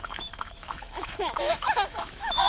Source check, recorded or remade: remade